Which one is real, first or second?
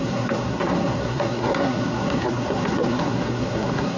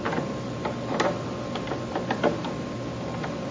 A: second